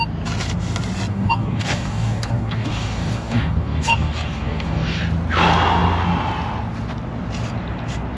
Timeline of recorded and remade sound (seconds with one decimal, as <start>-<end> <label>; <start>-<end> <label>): 0.0-1.1 recorded; 1.1-5.0 remade; 5.0-8.2 recorded